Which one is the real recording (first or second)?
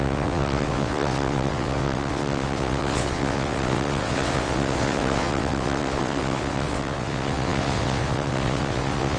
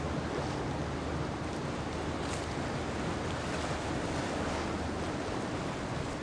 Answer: second